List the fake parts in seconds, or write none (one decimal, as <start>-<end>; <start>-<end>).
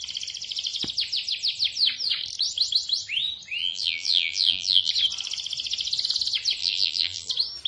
3.6-4.9; 6.6-7.3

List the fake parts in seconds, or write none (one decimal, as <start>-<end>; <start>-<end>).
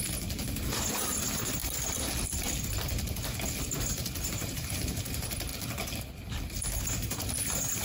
0.0-1.6; 3.6-5.5; 6.8-7.8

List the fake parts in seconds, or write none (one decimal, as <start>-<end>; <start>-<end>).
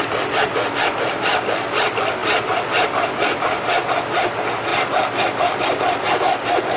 2.2-4.0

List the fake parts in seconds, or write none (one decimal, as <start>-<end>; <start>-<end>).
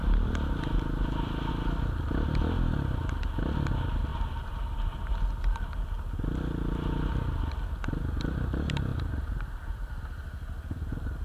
0.0-1.5; 4.1-5.2; 8.9-10.0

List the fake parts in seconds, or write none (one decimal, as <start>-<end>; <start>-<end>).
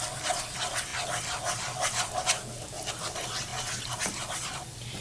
none